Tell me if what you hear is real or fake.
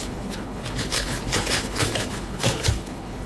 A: fake